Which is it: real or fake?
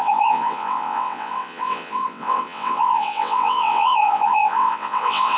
fake